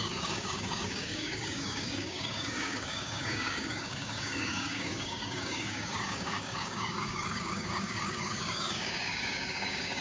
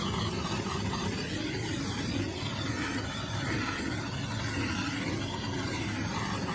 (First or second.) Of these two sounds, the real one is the second